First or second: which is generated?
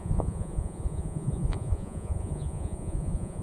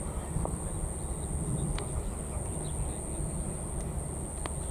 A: first